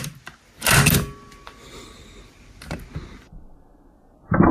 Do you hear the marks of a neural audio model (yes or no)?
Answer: no